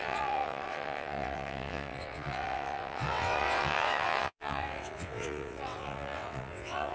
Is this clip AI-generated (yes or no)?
yes